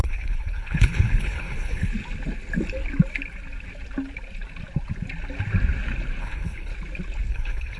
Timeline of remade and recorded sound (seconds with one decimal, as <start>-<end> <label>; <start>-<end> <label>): 0.0-1.9 remade; 1.9-6.2 recorded; 6.2-6.7 remade; 6.7-7.3 recorded; 7.3-7.8 remade